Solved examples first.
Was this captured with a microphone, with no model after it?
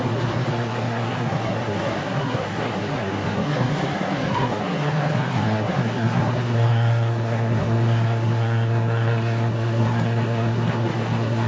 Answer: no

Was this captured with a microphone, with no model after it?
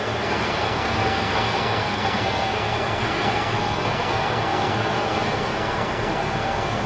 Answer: no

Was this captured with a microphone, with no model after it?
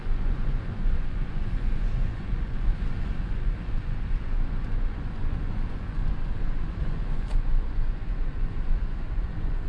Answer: no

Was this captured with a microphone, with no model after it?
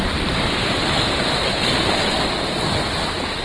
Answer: yes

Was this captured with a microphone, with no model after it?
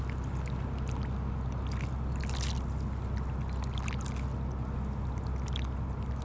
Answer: yes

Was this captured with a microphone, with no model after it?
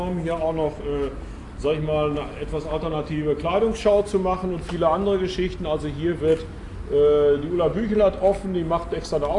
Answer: yes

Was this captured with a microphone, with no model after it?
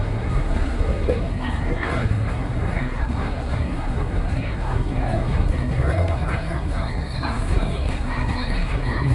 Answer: no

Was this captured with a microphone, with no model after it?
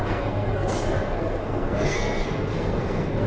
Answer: no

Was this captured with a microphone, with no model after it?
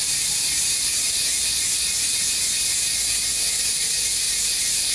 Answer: yes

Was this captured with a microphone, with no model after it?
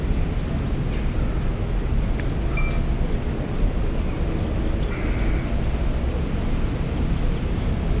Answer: yes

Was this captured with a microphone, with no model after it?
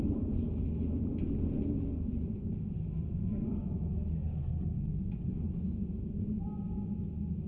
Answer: yes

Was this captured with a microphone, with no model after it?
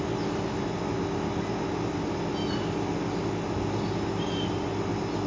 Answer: yes